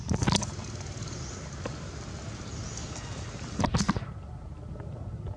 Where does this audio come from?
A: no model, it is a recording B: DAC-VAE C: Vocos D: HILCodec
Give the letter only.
A